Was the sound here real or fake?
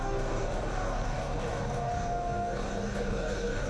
fake